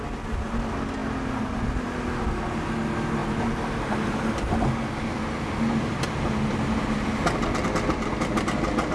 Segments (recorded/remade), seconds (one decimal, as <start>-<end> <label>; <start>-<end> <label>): 0.0-8.9 recorded